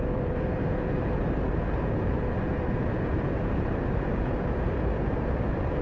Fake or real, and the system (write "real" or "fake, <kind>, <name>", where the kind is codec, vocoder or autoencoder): fake, vocoder, BigVGAN v2